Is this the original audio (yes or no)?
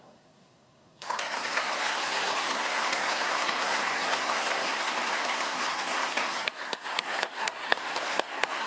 no